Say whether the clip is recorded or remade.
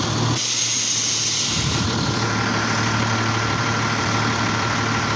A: remade